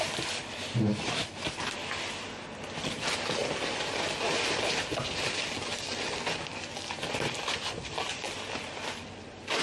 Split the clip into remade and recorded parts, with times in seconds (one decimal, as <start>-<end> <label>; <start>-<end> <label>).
0.0-9.6 recorded